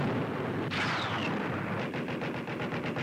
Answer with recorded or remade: recorded